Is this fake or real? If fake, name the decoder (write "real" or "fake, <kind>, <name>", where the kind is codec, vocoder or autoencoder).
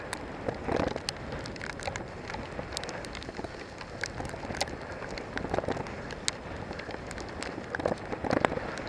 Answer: real